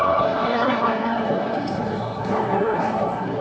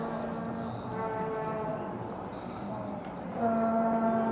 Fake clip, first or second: first